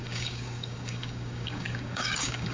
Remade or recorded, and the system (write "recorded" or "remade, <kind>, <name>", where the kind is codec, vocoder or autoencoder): remade, codec, DAC